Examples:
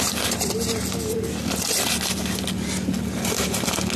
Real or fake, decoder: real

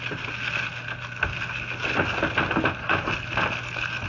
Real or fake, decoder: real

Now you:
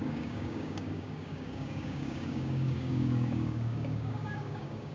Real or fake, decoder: fake, codec, DAC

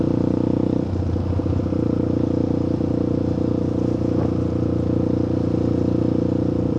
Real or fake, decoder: real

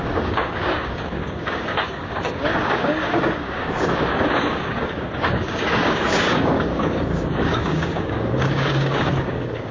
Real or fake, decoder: fake, codec, DAC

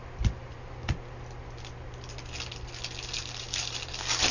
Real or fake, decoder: real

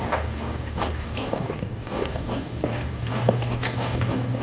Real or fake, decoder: fake, codec, DAC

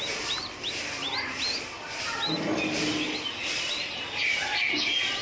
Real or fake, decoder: real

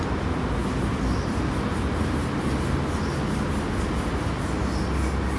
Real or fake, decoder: real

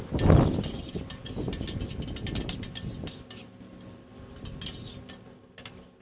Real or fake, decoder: real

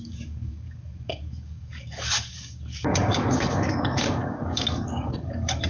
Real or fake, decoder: fake, codec, DAC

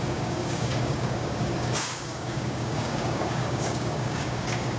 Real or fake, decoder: fake, codec, DAC